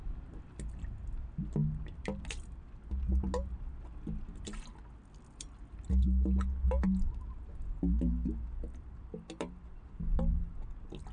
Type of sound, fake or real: real